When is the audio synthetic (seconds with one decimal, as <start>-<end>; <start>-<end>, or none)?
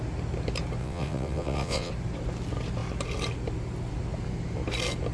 0.8-1.9